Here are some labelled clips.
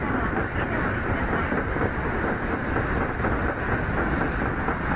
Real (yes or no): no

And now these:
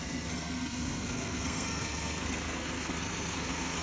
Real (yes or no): no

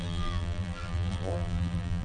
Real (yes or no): no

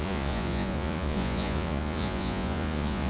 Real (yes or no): no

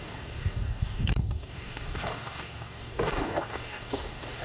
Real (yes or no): no